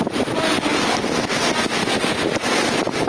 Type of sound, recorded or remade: recorded